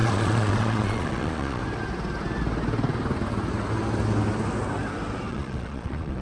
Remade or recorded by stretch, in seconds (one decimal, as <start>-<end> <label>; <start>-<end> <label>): 0.0-1.6 remade; 1.6-5.3 recorded; 5.3-6.2 remade